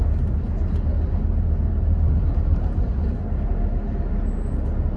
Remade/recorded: recorded